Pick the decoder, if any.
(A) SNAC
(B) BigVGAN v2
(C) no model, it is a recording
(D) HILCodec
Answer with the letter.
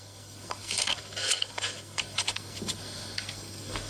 A